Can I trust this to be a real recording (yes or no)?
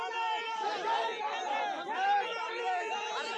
yes